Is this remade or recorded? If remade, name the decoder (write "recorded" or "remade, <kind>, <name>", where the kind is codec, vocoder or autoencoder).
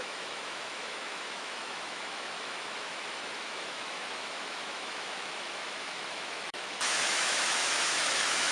remade, autoencoder, DAC-VAE